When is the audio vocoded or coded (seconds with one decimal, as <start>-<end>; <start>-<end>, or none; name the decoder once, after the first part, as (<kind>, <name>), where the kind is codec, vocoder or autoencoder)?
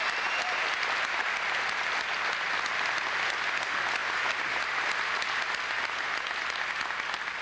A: none